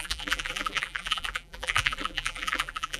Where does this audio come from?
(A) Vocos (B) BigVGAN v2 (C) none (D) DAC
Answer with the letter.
B